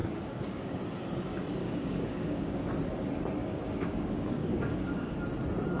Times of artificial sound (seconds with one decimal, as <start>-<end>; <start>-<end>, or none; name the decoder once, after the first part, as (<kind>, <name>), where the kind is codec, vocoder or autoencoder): 0.0-0.8 (codec, DAC); 1.6-2.7; 3.4-5.2